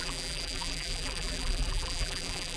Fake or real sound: fake